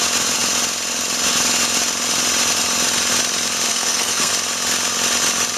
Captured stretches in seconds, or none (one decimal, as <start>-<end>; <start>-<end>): 0.0-3.7; 4.3-5.6

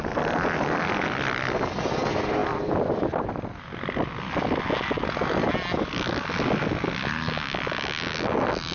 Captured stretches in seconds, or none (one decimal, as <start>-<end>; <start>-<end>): 0.0-8.7

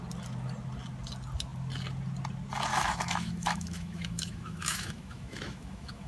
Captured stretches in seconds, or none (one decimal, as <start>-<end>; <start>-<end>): 0.0-2.7

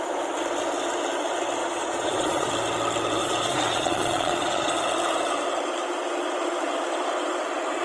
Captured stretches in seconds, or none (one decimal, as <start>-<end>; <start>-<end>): 0.0-1.6; 2.5-3.2; 4.7-7.8

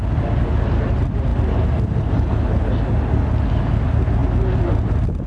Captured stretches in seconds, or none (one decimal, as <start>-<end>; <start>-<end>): 0.0-5.3

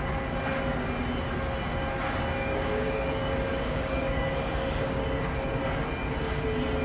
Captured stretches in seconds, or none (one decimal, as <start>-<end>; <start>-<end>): 0.0-2.3; 5.6-6.8

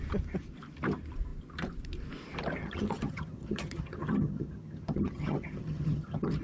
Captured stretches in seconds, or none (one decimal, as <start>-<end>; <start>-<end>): 0.0-2.6